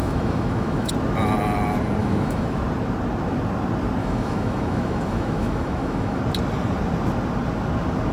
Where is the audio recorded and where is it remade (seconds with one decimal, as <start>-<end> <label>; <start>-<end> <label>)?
0.0-0.9 remade; 0.9-2.0 recorded; 2.0-2.6 remade; 2.6-4.0 recorded; 4.0-6.2 remade; 6.2-8.1 recorded